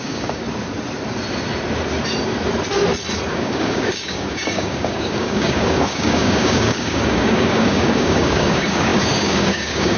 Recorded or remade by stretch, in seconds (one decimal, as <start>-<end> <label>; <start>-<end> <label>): 0.0-0.4 remade; 0.4-3.3 recorded; 3.3-10.0 remade